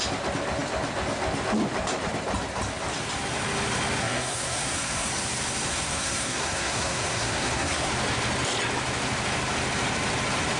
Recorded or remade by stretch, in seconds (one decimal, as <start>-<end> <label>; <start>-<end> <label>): 0.0-4.0 recorded; 4.0-5.1 remade; 5.1-5.6 recorded; 5.6-7.9 remade; 7.9-10.6 recorded

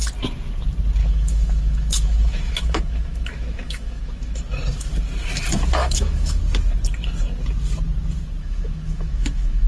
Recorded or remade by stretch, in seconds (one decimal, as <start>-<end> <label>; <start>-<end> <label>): 0.0-1.0 recorded; 1.0-4.4 remade; 4.4-5.8 recorded; 5.8-6.4 remade; 6.4-8.4 recorded; 8.4-9.7 remade

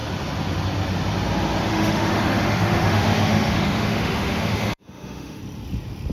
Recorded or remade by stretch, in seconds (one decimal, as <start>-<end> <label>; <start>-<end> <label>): 0.0-1.7 recorded; 1.7-5.4 remade; 5.4-6.1 recorded

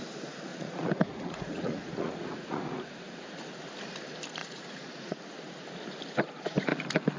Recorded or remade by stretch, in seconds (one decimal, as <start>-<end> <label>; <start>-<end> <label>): 0.0-0.5 recorded; 0.5-3.4 remade; 3.4-4.4 recorded; 4.4-5.2 remade; 5.2-7.2 recorded

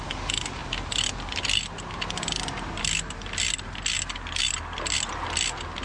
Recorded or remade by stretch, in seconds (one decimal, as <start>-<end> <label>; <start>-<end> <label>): 0.0-5.8 recorded